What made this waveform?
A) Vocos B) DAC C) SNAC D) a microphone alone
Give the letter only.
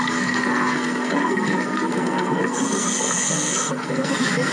C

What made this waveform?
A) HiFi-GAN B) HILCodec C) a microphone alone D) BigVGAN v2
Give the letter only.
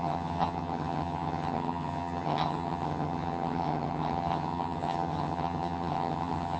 A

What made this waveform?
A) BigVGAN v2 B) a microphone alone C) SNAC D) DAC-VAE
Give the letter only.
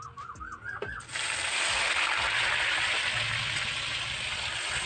B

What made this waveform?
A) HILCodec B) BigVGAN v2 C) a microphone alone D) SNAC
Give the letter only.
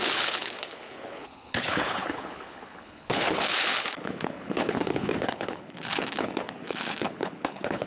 A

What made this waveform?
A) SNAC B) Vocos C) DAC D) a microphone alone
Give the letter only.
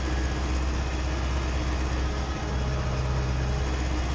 D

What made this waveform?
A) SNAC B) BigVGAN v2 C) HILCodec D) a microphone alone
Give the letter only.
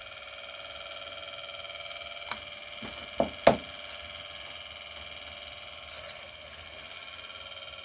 D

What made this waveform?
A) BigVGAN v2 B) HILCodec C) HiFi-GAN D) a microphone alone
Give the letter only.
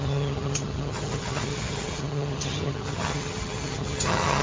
C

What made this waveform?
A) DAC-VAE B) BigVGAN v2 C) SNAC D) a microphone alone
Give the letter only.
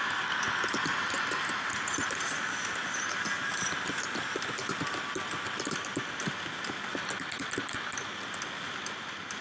D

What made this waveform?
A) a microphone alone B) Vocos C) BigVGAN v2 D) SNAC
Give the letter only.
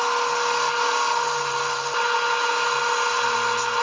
A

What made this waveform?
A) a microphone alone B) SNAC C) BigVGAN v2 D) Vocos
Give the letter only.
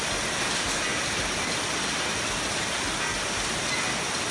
A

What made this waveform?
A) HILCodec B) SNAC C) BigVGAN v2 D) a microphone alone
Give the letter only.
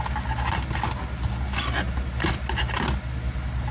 D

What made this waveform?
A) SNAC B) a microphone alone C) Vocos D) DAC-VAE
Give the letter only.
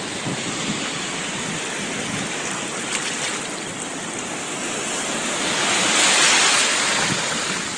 B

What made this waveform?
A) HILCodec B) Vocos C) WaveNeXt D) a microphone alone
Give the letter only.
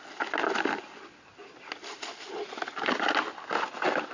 D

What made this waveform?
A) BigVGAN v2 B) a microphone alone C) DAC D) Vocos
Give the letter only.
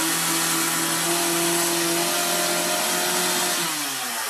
B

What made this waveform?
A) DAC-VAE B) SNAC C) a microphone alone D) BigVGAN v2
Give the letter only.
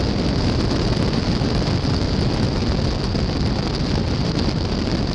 C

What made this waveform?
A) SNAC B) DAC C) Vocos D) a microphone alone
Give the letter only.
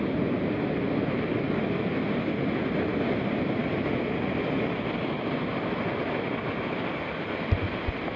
D